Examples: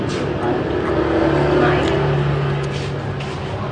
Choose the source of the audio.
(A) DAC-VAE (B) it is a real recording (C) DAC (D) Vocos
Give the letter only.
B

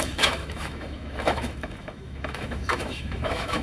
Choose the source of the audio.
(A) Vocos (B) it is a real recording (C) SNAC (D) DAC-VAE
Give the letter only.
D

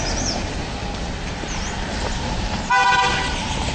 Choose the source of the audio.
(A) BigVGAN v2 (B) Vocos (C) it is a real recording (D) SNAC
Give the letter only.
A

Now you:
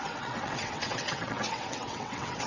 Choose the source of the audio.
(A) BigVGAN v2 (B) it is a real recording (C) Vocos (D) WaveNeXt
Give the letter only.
D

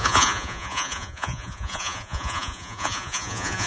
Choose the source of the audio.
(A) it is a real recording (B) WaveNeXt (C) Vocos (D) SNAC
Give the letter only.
C